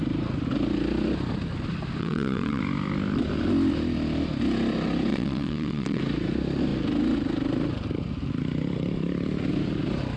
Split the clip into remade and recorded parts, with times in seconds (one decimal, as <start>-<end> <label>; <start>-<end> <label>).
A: 0.0-2.0 recorded; 2.0-2.6 remade; 2.6-5.1 recorded; 5.1-6.0 remade; 6.0-10.2 recorded